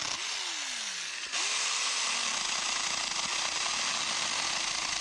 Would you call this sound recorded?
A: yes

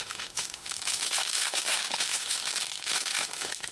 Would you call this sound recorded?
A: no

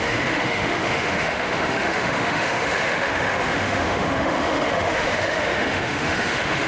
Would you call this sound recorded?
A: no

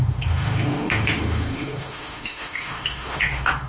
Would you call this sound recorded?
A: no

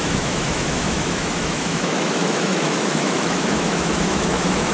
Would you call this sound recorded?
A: no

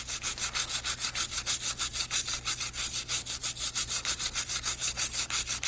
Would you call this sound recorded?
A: yes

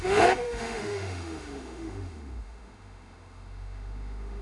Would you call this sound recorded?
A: no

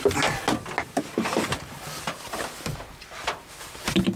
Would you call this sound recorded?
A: yes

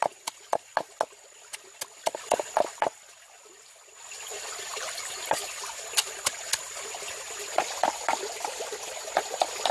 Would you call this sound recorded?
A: yes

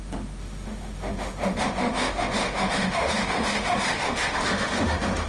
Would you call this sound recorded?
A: no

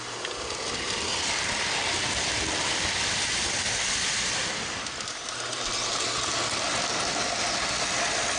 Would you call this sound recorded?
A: yes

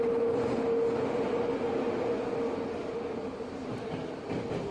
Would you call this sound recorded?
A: yes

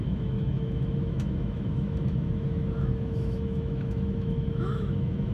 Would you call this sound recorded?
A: no